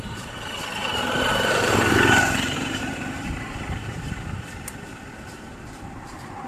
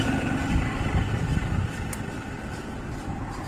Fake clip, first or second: first